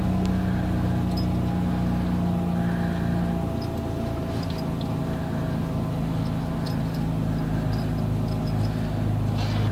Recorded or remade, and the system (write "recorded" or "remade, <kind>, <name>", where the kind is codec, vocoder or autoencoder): recorded